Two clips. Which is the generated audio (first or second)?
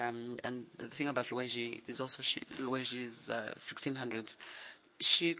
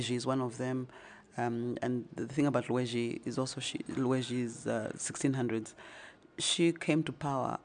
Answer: first